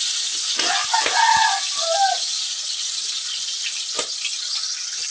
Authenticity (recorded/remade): recorded